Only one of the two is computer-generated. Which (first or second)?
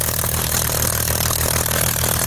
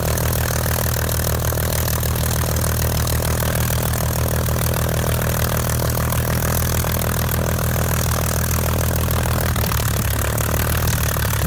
first